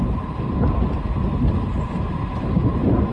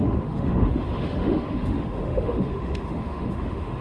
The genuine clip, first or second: first